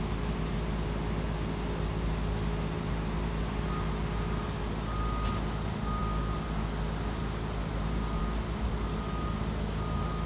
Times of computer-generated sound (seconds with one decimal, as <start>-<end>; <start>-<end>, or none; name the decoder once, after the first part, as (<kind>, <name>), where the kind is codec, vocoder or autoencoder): none

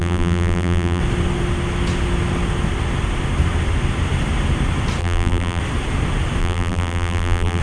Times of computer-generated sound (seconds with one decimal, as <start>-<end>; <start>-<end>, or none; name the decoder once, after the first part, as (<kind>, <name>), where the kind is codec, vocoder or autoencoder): 0.0-1.0 (vocoder, BigVGAN v2); 5.0-5.6; 6.4-7.6